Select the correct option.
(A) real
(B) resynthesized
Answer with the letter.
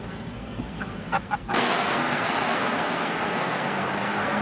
B